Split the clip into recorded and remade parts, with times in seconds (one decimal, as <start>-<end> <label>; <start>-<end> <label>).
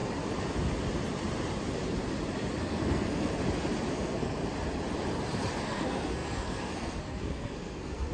0.0-2.6 recorded; 2.6-3.3 remade; 3.3-3.9 recorded; 3.9-4.4 remade; 4.4-5.6 recorded; 5.6-8.1 remade